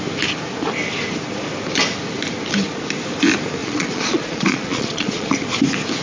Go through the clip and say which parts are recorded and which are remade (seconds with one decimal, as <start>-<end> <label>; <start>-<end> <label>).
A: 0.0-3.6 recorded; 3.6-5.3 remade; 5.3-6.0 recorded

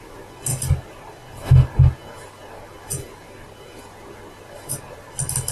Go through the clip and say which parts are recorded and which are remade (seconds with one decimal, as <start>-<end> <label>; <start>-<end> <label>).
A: 0.0-5.5 recorded

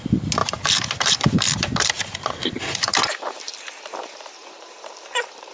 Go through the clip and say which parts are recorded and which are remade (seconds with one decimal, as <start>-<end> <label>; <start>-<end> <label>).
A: 0.0-0.4 recorded; 0.4-3.7 remade; 3.7-4.4 recorded; 4.4-5.5 remade